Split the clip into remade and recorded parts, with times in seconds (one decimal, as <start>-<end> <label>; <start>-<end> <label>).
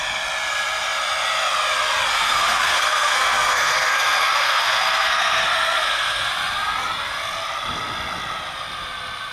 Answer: 0.0-2.1 recorded; 2.1-6.3 remade; 6.3-9.3 recorded